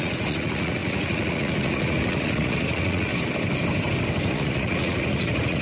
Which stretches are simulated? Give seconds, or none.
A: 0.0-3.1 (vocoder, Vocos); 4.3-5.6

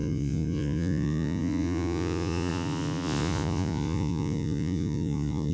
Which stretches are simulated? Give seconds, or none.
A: 0.0-5.5 (vocoder, Vocos)

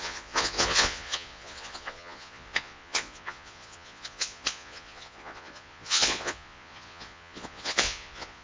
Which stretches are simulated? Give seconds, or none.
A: 0.0-8.4 (vocoder, Vocos)

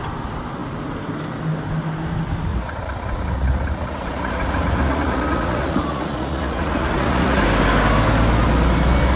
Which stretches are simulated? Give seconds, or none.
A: 2.5-7.4 (vocoder, Vocos)